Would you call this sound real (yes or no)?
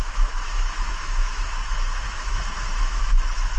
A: no